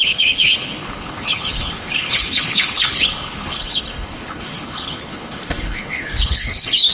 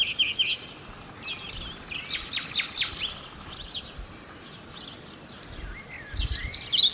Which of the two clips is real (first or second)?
second